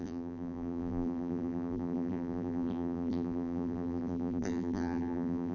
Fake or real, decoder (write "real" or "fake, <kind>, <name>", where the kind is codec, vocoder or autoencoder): fake, vocoder, BigVGAN v2